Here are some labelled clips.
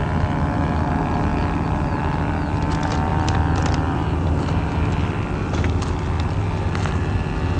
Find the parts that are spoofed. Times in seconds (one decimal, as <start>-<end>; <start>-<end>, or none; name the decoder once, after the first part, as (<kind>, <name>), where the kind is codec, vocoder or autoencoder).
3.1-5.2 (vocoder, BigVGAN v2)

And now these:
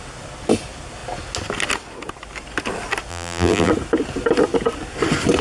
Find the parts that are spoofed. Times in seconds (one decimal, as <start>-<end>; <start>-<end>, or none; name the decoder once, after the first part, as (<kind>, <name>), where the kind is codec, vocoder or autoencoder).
3.1-3.7 (vocoder, BigVGAN v2)

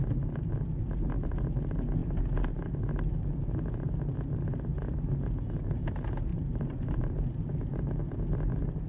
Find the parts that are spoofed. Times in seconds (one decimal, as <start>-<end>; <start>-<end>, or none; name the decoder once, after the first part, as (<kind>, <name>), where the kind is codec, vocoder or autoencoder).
4.7-5.3 (vocoder, BigVGAN v2); 6.3-7.5

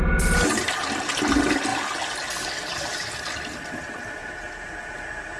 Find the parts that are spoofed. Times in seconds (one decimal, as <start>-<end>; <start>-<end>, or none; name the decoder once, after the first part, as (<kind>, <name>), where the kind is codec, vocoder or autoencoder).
none

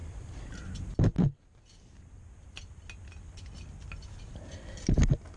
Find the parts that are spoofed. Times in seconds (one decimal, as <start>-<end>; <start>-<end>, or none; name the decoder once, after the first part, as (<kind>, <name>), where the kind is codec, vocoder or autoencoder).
none

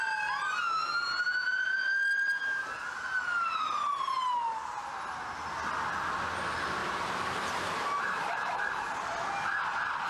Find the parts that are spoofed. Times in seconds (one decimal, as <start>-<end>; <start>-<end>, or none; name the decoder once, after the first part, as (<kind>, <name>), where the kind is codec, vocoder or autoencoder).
6.8-9.1 (vocoder, BigVGAN v2)

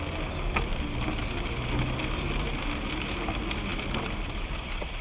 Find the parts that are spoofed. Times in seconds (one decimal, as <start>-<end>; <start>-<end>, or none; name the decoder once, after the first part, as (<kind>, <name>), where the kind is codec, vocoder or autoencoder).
3.7-5.0 (vocoder, BigVGAN v2)